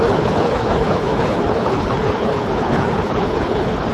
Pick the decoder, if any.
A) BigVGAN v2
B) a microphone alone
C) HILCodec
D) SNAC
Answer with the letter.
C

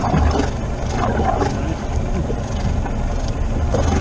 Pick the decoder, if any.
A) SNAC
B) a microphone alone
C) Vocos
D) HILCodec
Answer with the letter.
B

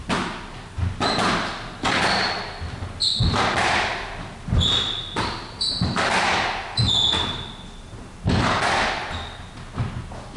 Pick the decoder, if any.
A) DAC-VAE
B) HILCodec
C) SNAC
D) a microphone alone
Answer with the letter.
D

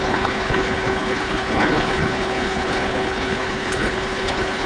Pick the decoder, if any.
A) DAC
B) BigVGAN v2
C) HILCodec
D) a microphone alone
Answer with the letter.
C